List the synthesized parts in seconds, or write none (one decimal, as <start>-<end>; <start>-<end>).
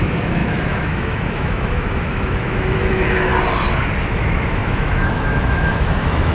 0.0-3.3; 4.0-6.3